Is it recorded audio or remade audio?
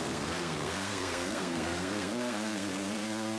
remade